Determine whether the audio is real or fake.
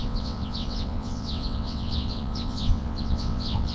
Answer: fake